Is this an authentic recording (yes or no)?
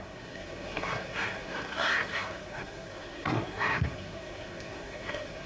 no